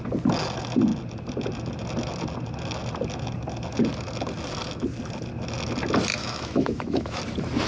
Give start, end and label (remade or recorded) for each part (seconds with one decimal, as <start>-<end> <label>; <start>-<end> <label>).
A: 0.0-6.1 recorded; 6.1-7.2 remade; 7.2-7.7 recorded